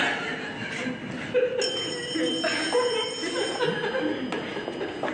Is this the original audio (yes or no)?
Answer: yes